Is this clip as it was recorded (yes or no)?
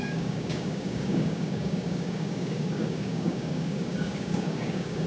no